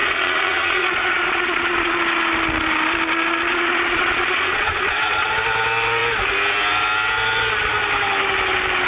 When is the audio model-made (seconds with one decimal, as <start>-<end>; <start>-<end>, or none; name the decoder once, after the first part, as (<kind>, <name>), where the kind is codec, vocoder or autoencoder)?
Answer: 0.0-2.0 (vocoder, Vocos); 3.5-5.4